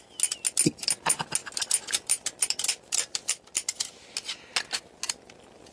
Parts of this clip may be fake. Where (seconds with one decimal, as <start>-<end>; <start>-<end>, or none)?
none